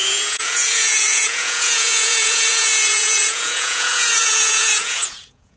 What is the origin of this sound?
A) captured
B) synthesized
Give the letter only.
B